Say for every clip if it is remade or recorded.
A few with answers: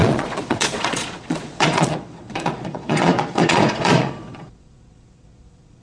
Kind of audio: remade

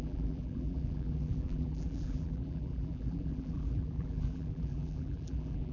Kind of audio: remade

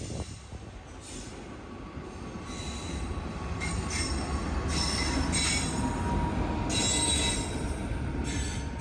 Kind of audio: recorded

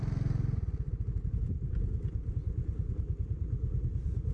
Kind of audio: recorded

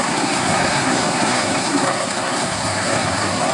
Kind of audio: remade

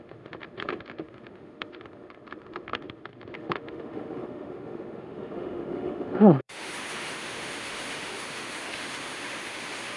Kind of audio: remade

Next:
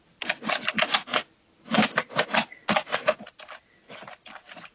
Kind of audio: recorded